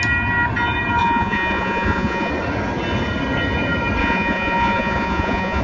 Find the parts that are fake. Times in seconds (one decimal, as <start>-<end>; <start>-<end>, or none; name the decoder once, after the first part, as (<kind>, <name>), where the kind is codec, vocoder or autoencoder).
1.0-2.3 (vocoder, Vocos); 4.0-5.6

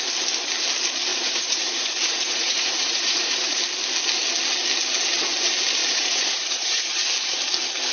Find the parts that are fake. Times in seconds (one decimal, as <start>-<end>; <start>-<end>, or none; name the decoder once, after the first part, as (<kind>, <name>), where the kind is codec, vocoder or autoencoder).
1.1-3.6 (vocoder, Vocos); 5.8-6.8